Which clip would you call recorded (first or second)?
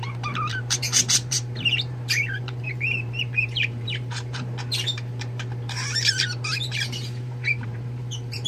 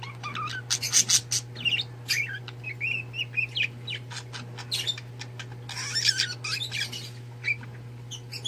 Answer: second